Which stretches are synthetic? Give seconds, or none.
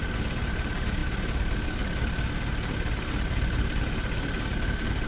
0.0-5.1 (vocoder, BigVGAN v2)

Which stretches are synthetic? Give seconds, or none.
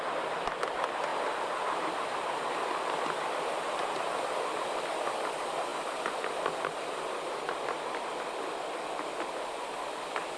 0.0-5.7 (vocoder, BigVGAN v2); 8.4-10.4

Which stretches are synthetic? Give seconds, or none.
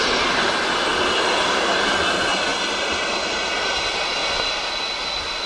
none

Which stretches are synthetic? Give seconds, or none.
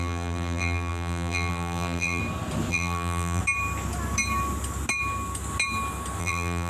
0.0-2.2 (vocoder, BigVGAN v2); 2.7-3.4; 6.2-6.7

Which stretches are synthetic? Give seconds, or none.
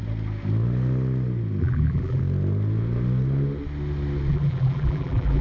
1.6-2.2 (vocoder, BigVGAN v2); 4.3-5.4